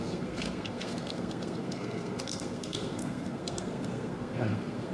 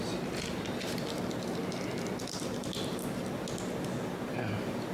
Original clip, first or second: second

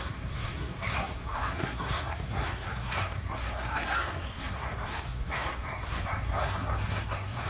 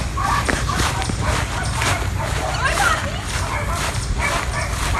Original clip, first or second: second